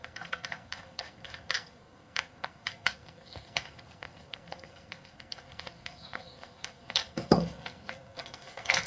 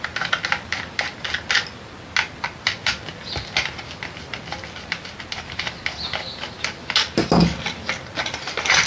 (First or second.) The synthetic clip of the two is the first